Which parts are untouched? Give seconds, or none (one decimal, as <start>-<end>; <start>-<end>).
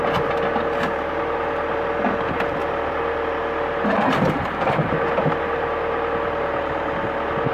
0.0-7.5